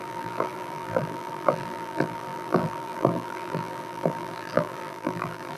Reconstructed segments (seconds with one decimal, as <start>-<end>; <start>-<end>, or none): 0.0-5.6